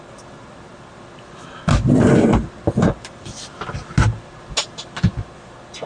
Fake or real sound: real